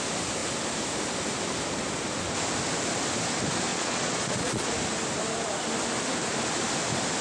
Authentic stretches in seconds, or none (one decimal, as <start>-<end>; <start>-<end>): 0.0-3.7; 4.7-7.2